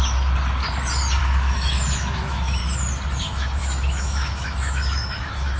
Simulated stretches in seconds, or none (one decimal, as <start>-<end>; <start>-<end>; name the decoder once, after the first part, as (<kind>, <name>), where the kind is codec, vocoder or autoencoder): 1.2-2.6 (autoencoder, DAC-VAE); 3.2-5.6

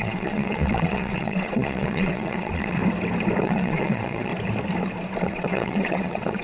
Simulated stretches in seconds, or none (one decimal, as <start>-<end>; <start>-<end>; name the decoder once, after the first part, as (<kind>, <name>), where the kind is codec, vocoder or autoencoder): 0.0-2.8 (vocoder, WaveNeXt); 3.4-4.3; 5.2-6.4

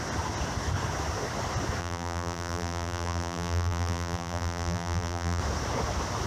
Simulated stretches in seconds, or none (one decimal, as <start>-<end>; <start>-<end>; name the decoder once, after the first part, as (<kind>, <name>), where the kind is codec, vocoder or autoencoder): 1.8-5.4 (vocoder, BigVGAN v2)

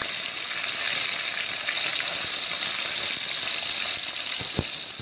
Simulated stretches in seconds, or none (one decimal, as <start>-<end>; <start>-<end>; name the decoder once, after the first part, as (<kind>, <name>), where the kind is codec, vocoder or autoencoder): none

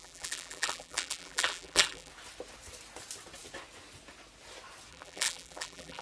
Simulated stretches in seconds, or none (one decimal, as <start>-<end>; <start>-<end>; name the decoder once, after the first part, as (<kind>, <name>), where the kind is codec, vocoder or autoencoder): 0.0-2.1 (vocoder, BigVGAN v2); 4.9-6.0